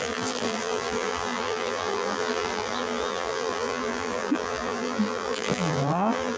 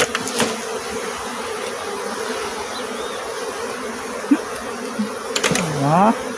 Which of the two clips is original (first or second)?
second